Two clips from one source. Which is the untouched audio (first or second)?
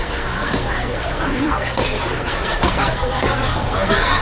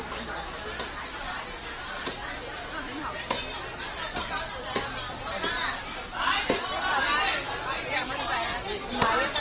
second